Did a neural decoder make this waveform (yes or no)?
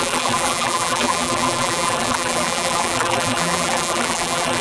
yes